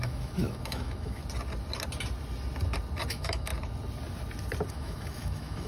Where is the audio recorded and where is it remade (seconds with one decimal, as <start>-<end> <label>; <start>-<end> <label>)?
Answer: 0.0-1.2 remade; 1.2-3.1 recorded; 3.1-3.5 remade; 3.5-4.7 recorded; 4.7-5.7 remade